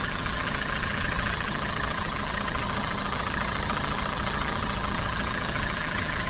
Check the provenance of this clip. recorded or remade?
remade